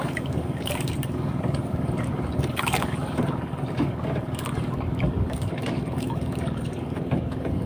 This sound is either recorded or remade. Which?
remade